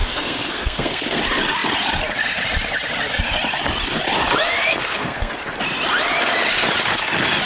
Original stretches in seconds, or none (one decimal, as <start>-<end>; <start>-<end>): 1.2-4.7; 5.3-7.5